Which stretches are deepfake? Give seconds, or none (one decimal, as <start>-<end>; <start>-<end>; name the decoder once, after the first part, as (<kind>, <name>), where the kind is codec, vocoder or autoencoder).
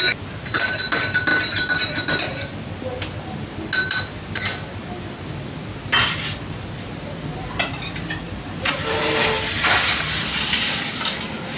none